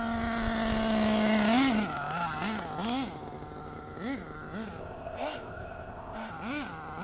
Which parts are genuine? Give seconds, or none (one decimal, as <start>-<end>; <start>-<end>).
0.0-4.8; 6.3-7.0